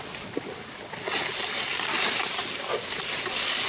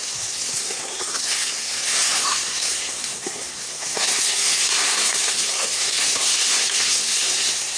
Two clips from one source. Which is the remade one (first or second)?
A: second